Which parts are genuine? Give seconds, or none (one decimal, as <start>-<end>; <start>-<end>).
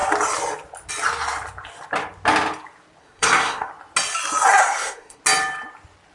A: 0.0-3.0; 3.7-4.5; 5.2-6.1